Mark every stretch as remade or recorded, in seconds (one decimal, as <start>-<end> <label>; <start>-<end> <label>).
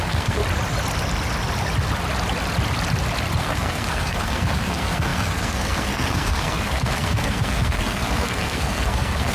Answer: 0.0-0.4 remade; 0.4-3.4 recorded; 3.4-9.3 remade